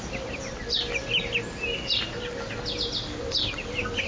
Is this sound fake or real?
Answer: real